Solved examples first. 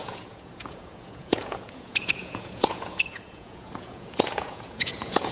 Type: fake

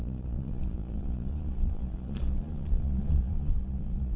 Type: fake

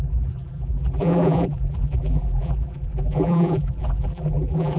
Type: fake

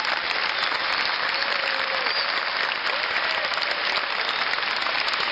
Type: real